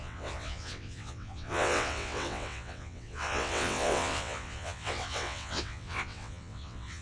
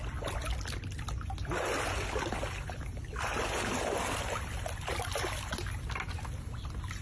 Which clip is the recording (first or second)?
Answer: second